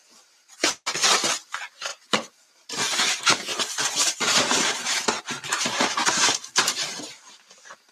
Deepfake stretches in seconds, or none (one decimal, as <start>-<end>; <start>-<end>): 1.9-2.7; 3.5-5.2; 6.0-7.9